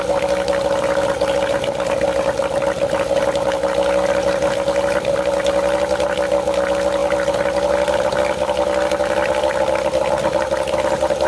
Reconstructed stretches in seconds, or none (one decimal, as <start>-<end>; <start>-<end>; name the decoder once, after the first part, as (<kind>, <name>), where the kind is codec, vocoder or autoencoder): none

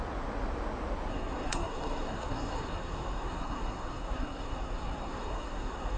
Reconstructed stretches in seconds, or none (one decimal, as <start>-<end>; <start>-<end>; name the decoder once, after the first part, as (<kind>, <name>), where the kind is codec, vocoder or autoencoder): 1.1-6.0 (codec, SNAC)

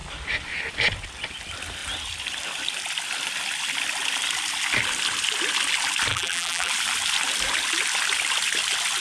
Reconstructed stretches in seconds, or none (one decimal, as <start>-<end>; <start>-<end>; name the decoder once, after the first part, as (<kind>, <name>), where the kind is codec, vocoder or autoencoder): 6.1-6.7 (vocoder, BigVGAN v2)

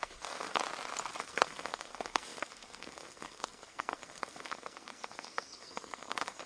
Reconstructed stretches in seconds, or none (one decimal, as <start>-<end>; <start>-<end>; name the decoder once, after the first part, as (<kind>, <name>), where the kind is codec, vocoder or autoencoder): 0.0-0.6 (codec, SNAC); 1.2-6.5

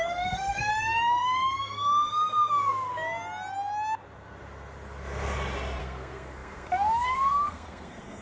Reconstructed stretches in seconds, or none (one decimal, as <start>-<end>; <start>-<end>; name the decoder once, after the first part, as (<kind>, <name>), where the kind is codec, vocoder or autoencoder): 0.0-2.9 (codec, SNAC); 5.8-8.2